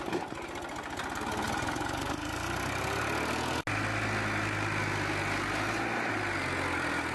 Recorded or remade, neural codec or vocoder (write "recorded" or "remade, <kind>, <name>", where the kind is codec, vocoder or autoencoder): recorded